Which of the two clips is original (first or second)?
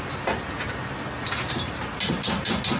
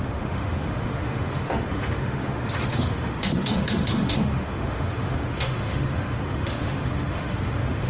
first